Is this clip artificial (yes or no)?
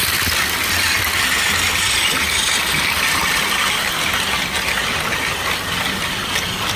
no